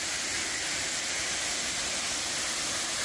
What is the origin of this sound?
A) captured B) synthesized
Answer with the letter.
A